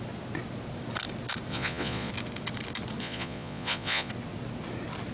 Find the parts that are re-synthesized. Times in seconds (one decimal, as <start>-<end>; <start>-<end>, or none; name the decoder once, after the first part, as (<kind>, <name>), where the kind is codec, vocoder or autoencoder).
1.5-2.1 (vocoder, Vocos); 3.0-4.1